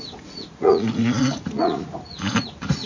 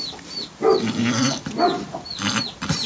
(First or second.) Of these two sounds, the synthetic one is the first